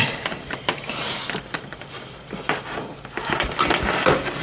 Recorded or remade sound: recorded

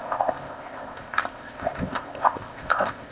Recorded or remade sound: remade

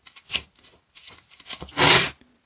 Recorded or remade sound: recorded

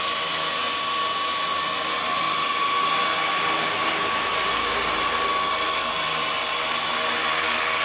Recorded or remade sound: recorded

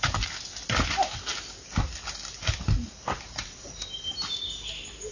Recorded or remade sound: recorded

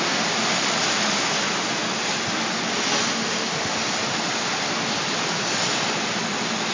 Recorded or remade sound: recorded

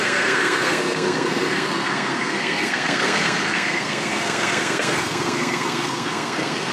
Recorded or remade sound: remade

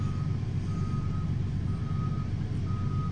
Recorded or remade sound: recorded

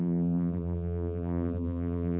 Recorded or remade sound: remade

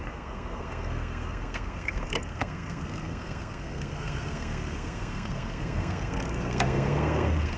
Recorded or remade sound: remade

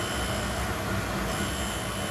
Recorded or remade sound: recorded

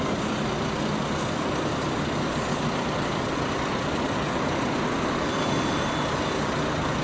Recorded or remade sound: recorded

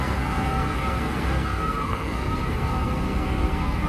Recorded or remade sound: remade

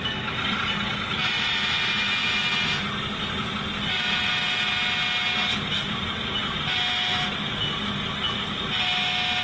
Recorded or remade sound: recorded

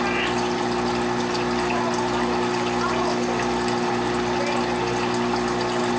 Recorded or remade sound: recorded